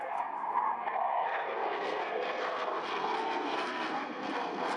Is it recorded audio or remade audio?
remade